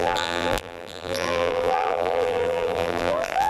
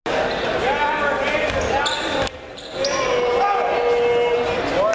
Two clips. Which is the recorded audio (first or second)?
second